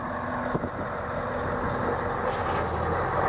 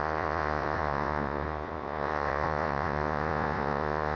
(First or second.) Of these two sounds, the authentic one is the first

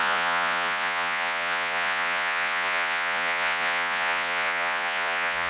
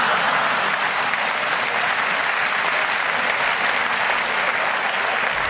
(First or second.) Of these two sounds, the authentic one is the second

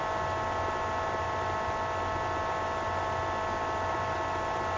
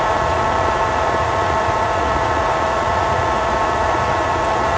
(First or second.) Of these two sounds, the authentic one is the first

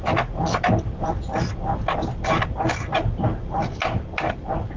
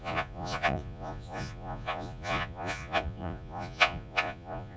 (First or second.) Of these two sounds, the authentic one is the first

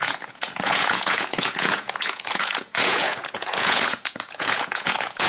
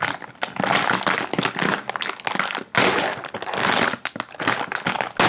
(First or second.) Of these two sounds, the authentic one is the second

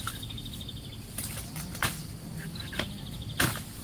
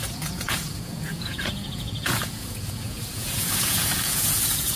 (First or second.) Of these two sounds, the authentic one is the first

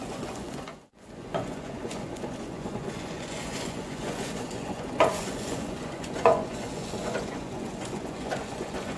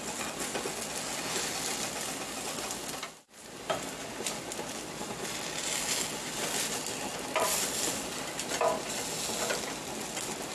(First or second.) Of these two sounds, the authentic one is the second